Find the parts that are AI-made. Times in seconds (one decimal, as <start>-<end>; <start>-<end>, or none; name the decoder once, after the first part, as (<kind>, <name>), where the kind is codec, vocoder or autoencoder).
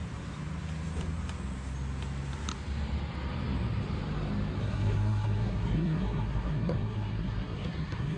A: 4.6-8.2 (codec, SNAC)